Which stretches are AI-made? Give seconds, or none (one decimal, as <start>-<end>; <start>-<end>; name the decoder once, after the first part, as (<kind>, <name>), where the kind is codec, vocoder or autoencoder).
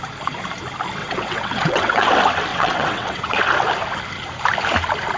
1.0-2.1 (vocoder, WaveNeXt); 2.5-3.4